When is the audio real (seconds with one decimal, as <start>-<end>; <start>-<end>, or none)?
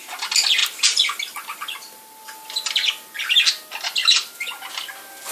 0.0-0.6; 3.2-5.3